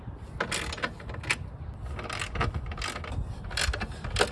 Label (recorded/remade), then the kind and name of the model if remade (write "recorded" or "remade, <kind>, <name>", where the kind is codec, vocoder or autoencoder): recorded